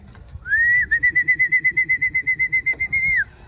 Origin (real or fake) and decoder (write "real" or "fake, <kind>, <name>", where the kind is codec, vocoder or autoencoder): real